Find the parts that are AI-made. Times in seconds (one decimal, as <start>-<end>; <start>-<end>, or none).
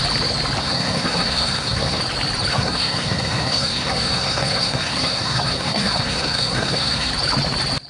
0.6-2.0; 2.5-7.1